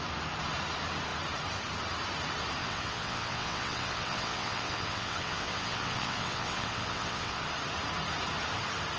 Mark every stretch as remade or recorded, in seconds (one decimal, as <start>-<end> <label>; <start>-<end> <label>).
0.0-2.6 recorded; 2.6-7.4 remade; 7.4-9.0 recorded